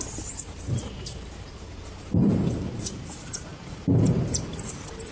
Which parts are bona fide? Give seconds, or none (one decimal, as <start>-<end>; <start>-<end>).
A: none